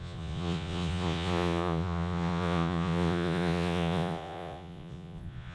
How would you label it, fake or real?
fake